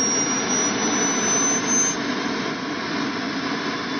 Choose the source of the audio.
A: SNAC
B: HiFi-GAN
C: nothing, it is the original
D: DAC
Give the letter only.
C